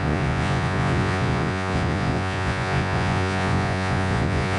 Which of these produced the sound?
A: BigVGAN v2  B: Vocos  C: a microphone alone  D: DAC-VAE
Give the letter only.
B